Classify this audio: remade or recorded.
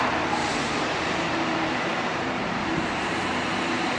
remade